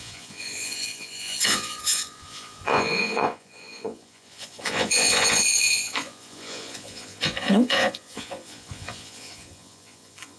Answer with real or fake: fake